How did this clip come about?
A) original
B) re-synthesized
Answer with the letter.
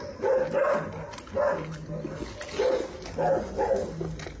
A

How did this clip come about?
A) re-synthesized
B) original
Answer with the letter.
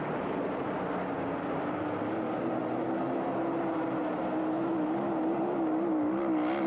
B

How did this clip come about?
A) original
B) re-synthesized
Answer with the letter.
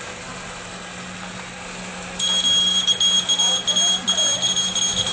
A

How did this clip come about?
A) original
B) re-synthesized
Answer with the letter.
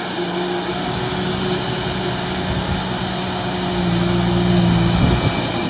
A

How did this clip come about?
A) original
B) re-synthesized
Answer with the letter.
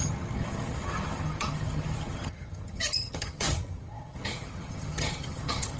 B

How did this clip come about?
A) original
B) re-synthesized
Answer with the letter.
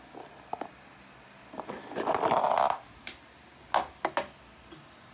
A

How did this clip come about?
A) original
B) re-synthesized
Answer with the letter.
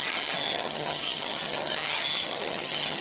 B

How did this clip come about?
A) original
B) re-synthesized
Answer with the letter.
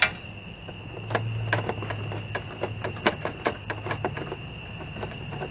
A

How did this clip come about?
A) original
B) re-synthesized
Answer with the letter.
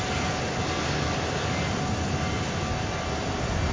A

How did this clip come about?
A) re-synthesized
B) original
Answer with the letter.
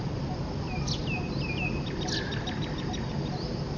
B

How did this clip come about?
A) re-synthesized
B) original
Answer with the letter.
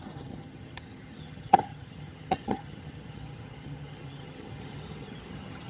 A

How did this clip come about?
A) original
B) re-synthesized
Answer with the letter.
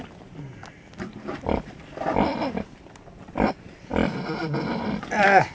A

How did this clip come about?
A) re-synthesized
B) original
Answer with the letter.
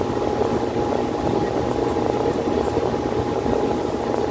B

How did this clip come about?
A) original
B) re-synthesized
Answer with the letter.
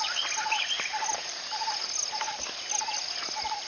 A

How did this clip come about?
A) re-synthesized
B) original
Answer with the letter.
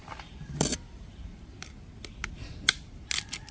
B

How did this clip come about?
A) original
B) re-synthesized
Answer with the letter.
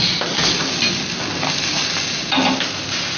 A